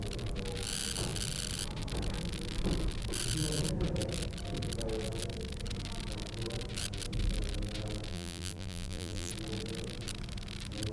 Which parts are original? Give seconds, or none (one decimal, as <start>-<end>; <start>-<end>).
0.0-8.1; 9.3-10.9